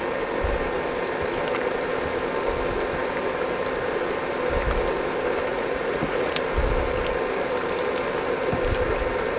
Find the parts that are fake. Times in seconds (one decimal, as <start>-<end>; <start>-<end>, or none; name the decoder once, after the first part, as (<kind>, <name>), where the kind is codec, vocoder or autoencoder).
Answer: 5.5-6.4 (vocoder, Vocos)